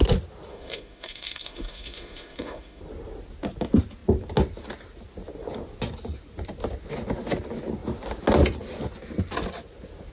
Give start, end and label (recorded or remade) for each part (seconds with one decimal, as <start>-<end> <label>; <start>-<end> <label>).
0.0-0.5 recorded; 0.5-2.8 remade; 2.8-10.1 recorded